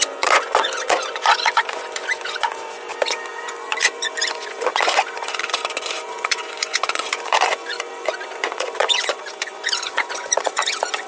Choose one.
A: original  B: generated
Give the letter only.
B